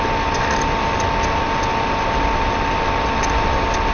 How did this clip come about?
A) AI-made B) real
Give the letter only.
B